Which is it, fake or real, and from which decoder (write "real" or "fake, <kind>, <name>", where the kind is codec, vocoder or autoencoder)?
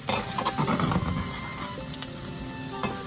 real